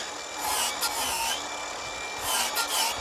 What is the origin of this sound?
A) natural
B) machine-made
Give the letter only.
A